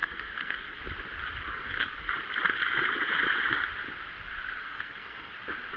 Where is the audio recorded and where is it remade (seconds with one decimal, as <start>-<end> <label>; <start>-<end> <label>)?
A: 0.0-0.8 remade; 0.8-1.5 recorded; 1.5-2.1 remade; 2.1-4.6 recorded; 4.6-5.3 remade; 5.3-5.8 recorded